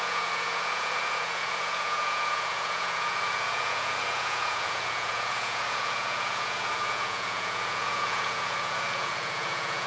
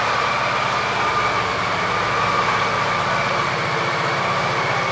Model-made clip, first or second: first